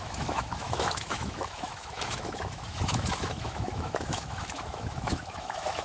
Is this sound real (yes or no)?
no